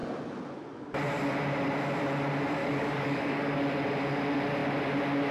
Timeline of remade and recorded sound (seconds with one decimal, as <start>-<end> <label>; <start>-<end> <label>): 0.0-2.6 recorded; 2.6-3.6 remade; 3.6-5.3 recorded